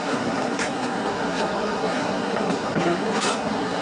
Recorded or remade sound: remade